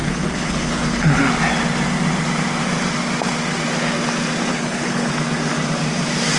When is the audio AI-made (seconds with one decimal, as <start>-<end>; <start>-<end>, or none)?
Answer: 0.0-1.2; 4.5-5.1